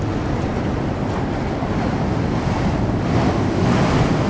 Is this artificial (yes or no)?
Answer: no